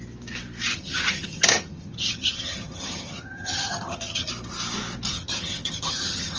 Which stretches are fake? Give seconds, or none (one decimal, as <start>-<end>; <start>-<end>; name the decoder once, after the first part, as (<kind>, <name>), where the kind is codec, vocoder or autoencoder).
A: 0.7-4.3 (vocoder, HiFi-GAN); 5.1-6.4